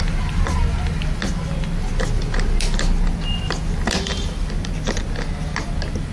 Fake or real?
real